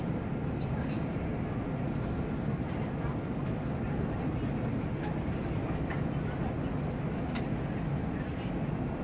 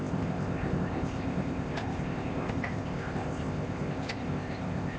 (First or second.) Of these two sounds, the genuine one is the first